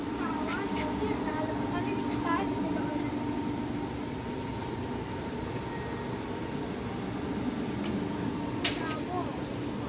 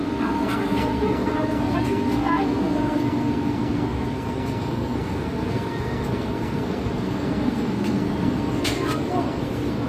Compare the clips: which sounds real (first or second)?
first